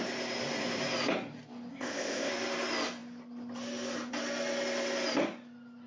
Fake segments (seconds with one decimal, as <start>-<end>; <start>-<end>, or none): 1.7-2.3